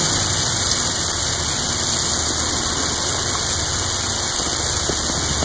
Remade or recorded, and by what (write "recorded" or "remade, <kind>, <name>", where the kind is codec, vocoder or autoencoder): recorded